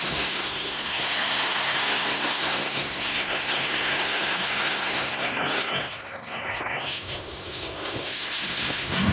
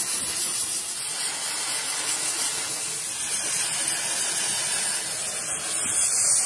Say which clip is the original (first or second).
second